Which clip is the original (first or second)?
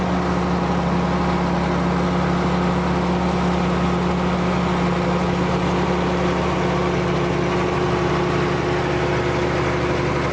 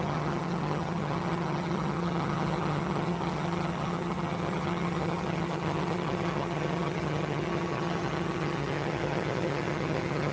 first